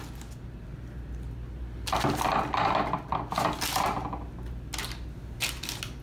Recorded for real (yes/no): yes